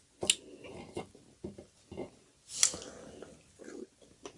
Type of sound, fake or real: real